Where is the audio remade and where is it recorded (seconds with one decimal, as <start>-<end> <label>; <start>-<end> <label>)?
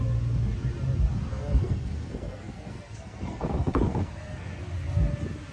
0.0-1.3 recorded; 1.3-4.6 remade; 4.6-5.5 recorded